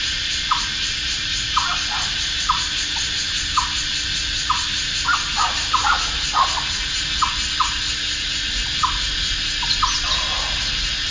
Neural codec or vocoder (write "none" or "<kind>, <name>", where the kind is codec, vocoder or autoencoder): none